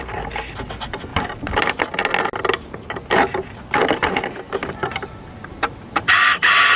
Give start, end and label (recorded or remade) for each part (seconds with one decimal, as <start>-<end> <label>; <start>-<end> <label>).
0.0-6.8 recorded